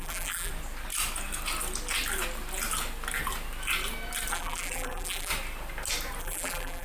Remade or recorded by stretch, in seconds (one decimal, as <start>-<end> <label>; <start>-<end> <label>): 0.0-0.5 remade; 0.5-4.3 recorded; 4.3-5.3 remade; 5.3-6.2 recorded; 6.2-6.8 remade